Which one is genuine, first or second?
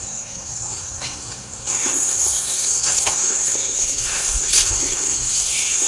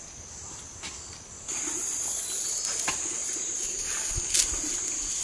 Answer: second